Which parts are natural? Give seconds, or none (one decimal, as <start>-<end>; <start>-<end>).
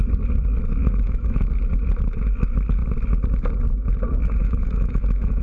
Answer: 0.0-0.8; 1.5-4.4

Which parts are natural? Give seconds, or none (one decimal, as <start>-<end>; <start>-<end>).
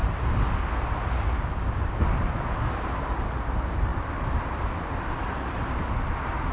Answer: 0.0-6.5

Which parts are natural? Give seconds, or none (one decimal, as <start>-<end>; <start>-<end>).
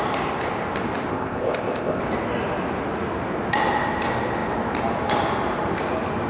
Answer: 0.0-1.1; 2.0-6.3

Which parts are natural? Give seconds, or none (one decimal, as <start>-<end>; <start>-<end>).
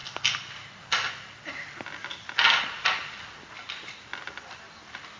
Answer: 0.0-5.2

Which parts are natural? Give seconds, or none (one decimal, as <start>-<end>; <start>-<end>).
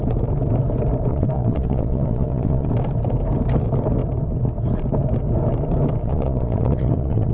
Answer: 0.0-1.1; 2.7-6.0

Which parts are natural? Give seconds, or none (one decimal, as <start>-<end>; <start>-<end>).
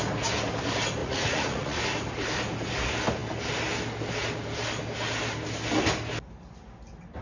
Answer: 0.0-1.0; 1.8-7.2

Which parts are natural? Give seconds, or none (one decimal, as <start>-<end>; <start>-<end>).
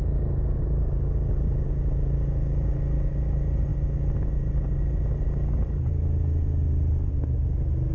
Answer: 0.0-7.9